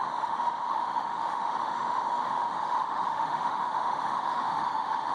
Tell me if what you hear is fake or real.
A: fake